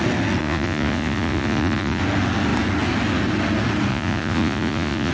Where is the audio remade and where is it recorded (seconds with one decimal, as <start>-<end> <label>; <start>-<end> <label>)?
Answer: 0.0-0.4 recorded; 0.4-2.0 remade; 2.0-3.9 recorded; 3.9-5.1 remade